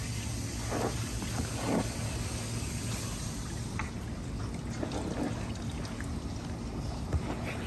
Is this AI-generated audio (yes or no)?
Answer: no